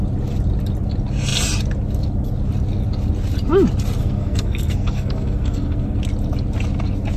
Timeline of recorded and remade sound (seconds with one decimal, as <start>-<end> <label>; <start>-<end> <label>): 0.0-4.0 recorded; 4.0-6.0 remade; 6.0-7.2 recorded